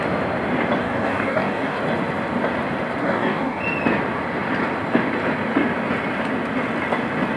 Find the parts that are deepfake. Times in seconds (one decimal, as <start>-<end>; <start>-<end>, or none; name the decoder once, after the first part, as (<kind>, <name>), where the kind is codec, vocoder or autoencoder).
0.8-1.8 (codec, DAC); 3.0-3.6